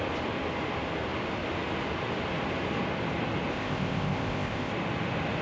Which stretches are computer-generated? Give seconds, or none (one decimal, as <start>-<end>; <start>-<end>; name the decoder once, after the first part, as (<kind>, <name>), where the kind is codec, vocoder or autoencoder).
3.5-4.7 (codec, ZipCodec)